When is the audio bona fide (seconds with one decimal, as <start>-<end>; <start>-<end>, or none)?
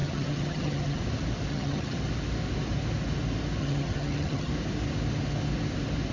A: 1.0-1.5; 2.0-3.6; 4.5-6.1